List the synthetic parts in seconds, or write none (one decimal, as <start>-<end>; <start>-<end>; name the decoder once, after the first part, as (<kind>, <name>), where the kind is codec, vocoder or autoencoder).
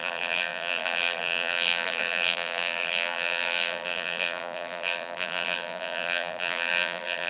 0.0-7.3 (vocoder, BigVGAN v2)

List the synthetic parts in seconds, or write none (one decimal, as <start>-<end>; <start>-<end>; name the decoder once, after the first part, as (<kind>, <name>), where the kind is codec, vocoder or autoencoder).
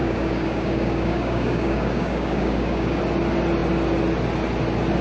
0.0-3.0 (codec, DAC)